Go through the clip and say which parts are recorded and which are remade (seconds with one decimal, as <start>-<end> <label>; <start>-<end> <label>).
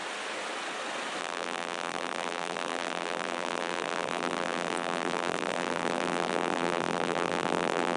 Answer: 0.0-1.2 recorded; 1.2-8.0 remade